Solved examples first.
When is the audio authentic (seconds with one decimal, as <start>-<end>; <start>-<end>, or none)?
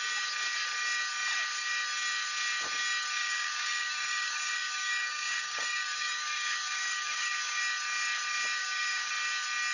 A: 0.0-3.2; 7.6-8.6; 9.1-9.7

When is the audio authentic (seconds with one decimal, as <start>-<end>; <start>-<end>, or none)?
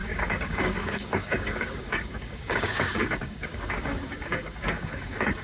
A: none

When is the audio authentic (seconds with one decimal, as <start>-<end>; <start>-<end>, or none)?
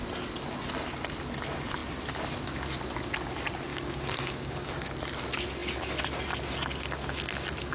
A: 0.0-3.7; 4.7-7.7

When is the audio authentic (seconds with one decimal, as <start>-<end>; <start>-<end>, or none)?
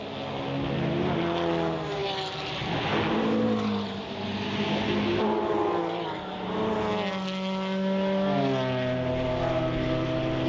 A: 0.0-10.5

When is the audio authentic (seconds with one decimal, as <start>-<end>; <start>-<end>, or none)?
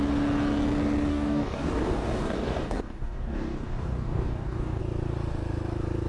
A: 0.0-1.1; 4.8-6.1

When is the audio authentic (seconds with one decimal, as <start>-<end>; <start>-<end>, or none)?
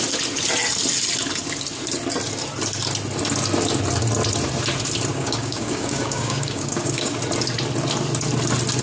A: 0.0-5.1; 7.2-8.8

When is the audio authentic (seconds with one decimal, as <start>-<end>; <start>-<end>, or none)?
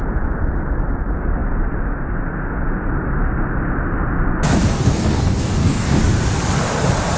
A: 0.0-4.7; 6.0-7.2